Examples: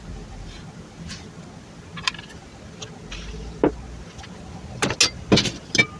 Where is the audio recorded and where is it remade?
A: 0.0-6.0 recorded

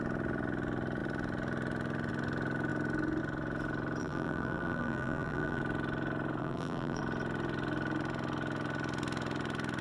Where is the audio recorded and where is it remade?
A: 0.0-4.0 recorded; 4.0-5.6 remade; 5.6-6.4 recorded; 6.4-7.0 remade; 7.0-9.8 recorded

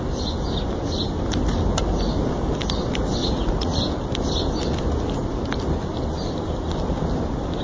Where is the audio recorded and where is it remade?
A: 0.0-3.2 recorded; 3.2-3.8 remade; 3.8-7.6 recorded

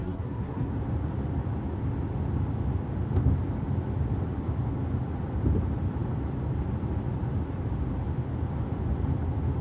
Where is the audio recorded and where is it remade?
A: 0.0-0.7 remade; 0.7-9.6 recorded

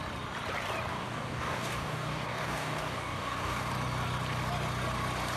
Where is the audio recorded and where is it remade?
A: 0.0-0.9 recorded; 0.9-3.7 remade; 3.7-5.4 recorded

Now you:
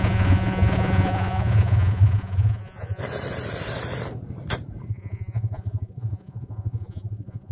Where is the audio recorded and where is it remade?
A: 0.0-3.0 remade; 3.0-4.9 recorded; 4.9-7.5 remade

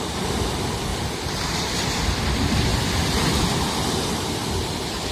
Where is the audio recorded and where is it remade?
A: 0.0-0.9 recorded; 0.9-1.7 remade; 1.7-2.7 recorded; 2.7-3.3 remade; 3.3-5.1 recorded